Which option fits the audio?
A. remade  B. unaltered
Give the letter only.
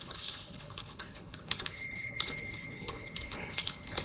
A